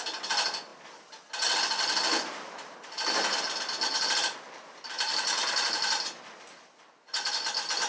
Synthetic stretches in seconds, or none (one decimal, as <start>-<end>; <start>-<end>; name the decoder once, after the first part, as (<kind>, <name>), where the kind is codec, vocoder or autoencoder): none